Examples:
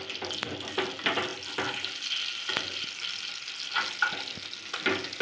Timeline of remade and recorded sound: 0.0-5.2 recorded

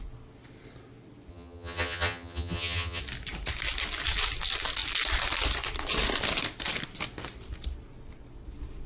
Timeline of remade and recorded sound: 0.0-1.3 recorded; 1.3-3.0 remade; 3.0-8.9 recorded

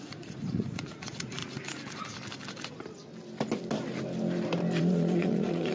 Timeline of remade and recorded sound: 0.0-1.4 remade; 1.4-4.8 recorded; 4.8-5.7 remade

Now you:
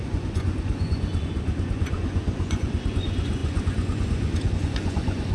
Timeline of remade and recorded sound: 0.0-5.3 remade